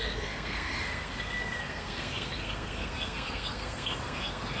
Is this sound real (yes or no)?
no